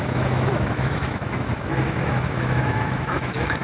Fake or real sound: fake